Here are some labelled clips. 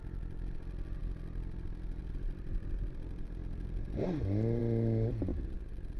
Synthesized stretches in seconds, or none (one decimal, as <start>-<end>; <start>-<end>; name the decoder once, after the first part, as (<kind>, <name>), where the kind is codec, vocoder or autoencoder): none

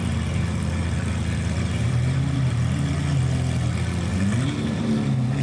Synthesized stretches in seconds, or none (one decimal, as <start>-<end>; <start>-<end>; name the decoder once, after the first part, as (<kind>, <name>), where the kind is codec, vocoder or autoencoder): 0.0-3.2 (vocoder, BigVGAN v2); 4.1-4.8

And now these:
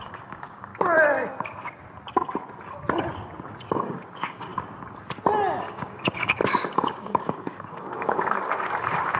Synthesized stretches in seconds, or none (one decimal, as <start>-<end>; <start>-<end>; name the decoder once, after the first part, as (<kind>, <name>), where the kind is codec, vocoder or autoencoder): 0.0-0.7 (codec, DAC); 3.7-4.5; 5.6-9.2

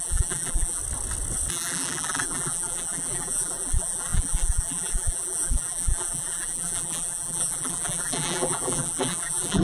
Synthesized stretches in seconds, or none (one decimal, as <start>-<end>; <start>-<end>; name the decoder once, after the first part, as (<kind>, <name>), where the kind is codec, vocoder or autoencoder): 0.0-0.8 (vocoder, BigVGAN v2); 1.5-9.6

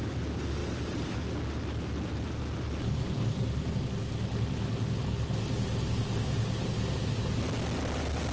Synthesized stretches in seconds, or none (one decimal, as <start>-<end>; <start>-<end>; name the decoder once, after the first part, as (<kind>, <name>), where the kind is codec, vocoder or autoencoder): none

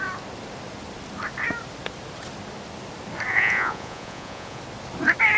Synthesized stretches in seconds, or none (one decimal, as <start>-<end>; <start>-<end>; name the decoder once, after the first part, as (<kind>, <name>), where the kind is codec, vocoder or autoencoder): 3.3-4.6 (vocoder, Vocos)